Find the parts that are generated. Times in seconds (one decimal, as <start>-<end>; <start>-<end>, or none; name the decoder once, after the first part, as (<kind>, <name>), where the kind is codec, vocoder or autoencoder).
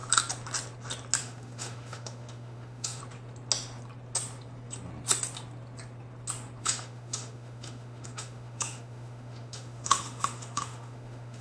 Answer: 1.2-3.0 (autoencoder, DAC-VAE); 6.6-11.4